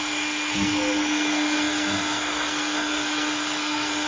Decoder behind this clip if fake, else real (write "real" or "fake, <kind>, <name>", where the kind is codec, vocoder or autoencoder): fake, codec, SNAC